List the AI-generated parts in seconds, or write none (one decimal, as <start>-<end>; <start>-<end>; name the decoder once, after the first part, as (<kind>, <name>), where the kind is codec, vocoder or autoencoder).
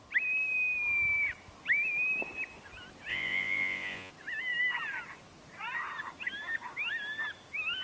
3.1-4.1 (vocoder, Vocos)